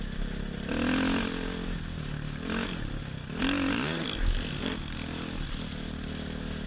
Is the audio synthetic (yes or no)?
no